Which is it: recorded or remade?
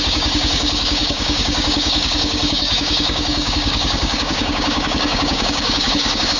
remade